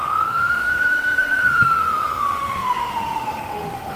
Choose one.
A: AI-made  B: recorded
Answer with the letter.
A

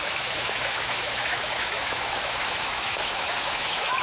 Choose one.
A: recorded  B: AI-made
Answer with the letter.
B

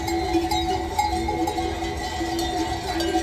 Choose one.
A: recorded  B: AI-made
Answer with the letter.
A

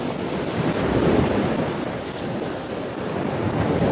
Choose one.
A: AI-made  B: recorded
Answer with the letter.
B